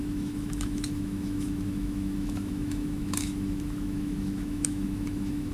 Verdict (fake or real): fake